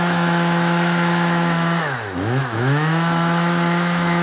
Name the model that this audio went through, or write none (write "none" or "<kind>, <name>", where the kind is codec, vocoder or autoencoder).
autoencoder, DAC-VAE